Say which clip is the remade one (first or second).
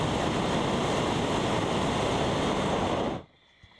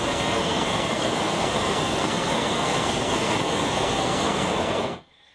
second